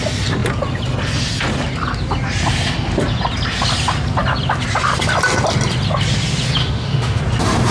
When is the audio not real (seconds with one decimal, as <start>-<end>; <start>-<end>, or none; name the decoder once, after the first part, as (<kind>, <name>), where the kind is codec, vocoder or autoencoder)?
6.6-7.2 (autoencoder, DAC-VAE)